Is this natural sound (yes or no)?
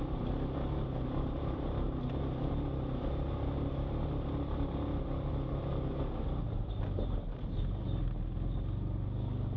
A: yes